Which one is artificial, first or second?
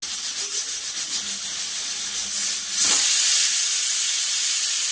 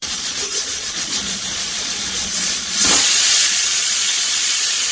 second